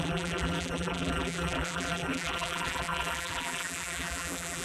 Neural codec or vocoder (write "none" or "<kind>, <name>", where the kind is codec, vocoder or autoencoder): vocoder, BigVGAN v2